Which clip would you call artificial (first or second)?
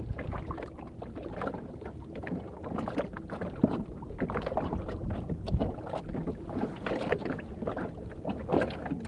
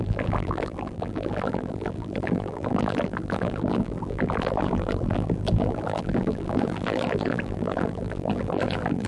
second